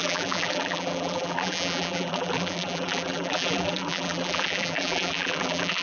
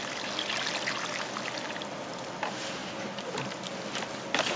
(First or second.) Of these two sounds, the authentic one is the second